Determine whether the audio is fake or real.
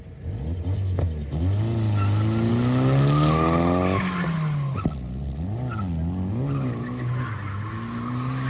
real